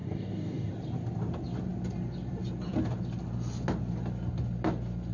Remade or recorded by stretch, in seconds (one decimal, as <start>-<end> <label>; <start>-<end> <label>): 0.0-0.7 remade; 0.7-5.1 recorded